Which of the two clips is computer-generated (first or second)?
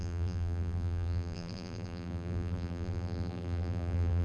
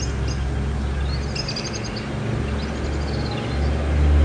first